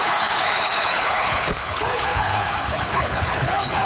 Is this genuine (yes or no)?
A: no